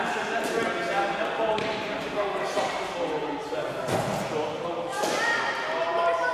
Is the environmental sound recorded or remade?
recorded